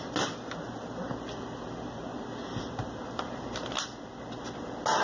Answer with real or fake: real